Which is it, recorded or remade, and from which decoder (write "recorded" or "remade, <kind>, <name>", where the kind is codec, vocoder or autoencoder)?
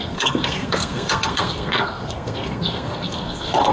remade, codec, SNAC